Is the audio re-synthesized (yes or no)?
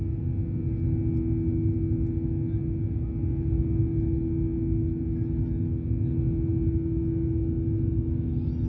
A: no